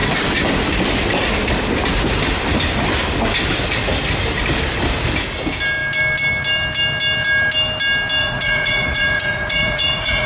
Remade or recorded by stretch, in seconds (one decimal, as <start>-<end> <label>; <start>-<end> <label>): 0.0-8.2 recorded; 8.2-10.3 remade